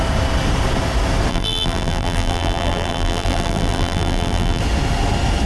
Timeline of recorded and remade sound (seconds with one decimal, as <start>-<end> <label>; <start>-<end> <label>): 0.0-1.3 recorded; 1.3-4.6 remade; 4.6-5.5 recorded